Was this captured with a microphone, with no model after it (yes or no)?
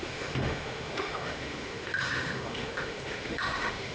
no